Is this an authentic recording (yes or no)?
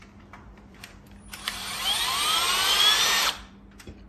no